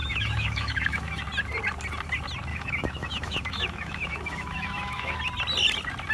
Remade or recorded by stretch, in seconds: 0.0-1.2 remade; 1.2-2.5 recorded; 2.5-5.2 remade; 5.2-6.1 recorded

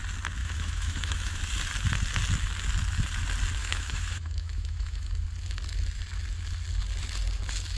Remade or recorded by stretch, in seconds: 0.0-0.4 recorded; 0.4-1.4 remade; 1.4-3.6 recorded; 3.6-5.1 remade; 5.1-7.8 recorded